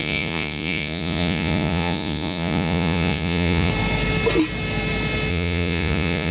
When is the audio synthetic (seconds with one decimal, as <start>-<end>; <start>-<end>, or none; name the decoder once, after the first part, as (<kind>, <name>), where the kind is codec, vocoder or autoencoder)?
0.0-3.7 (vocoder, Vocos); 5.3-6.3